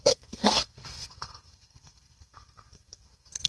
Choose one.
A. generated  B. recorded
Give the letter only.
A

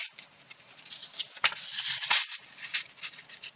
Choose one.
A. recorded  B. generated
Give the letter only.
A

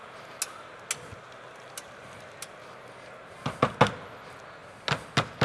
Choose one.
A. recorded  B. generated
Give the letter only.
A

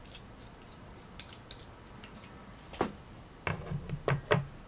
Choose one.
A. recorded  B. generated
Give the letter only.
A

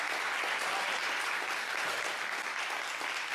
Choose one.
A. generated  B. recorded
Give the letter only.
B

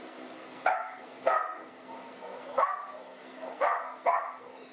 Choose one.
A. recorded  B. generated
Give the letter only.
B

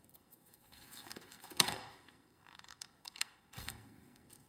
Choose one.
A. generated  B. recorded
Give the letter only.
A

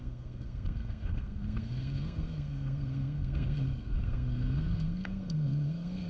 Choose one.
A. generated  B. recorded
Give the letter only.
A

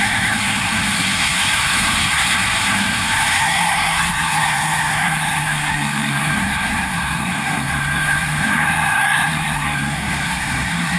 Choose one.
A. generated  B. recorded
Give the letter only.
A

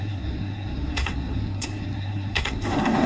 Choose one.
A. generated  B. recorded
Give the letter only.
A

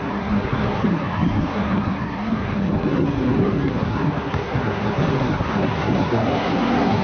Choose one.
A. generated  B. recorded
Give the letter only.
A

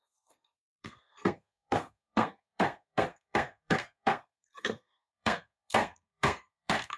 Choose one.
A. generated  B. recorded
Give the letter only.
A